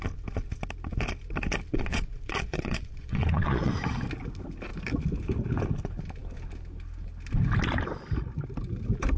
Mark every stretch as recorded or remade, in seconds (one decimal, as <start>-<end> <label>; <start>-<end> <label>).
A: 0.0-1.7 recorded; 1.7-3.7 remade; 3.7-9.2 recorded